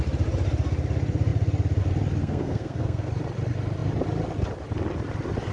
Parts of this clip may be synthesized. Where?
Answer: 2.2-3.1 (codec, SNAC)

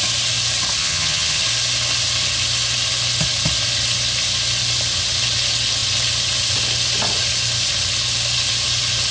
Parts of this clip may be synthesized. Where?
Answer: 0.8-1.4 (vocoder, HiFi-GAN)

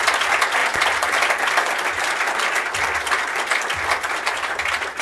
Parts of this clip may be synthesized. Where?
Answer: none